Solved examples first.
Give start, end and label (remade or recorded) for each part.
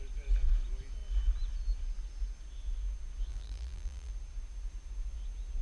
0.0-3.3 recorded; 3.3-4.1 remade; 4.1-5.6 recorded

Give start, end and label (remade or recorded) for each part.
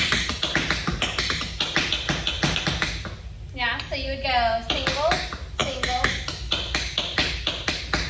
0.0-5.6 recorded; 5.6-6.1 remade; 6.1-8.1 recorded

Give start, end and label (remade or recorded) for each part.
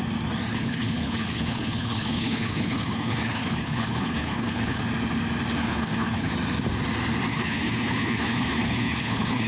0.0-0.5 recorded; 0.5-4.8 remade; 4.8-5.6 recorded; 5.6-6.3 remade; 6.3-7.3 recorded; 7.3-9.5 remade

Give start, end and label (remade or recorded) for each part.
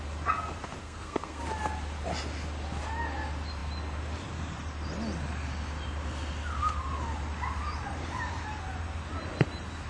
0.0-0.8 recorded; 0.8-1.4 remade; 1.4-9.9 recorded